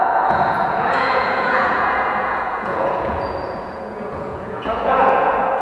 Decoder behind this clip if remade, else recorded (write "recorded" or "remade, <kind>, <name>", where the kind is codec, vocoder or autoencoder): remade, vocoder, Vocos